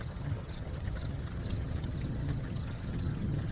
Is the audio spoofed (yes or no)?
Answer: yes